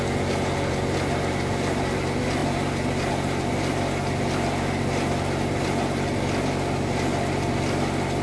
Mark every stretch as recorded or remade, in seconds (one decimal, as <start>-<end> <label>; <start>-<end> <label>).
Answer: 0.0-8.2 recorded